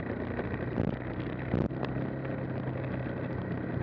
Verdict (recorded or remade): recorded